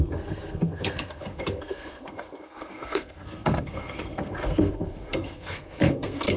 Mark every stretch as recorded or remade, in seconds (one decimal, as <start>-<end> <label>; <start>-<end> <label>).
0.0-6.4 remade